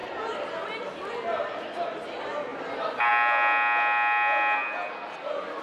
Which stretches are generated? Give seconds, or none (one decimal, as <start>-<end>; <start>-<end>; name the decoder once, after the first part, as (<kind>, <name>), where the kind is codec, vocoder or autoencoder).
none